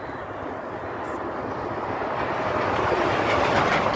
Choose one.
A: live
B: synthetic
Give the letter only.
B